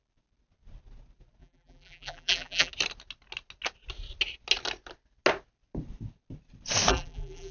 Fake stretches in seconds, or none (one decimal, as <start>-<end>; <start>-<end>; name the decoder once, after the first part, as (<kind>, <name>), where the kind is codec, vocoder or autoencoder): 1.4-2.7 (vocoder, BigVGAN v2); 6.9-7.5

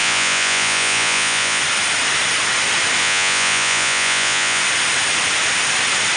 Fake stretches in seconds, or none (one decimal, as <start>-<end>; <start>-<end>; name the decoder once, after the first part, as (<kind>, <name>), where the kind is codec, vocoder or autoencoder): 0.0-1.6 (vocoder, Vocos); 3.0-4.6

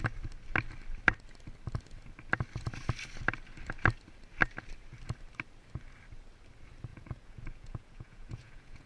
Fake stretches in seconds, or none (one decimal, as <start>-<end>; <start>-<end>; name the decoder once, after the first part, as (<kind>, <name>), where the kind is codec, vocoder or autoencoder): 6.9-8.9 (vocoder, Vocos)

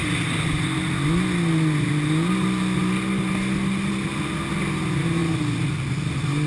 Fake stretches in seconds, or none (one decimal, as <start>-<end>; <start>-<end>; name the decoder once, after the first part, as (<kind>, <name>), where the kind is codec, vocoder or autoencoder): none